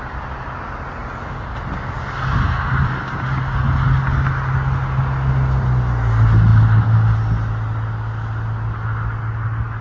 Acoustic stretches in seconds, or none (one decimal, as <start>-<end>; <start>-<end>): 0.0-9.8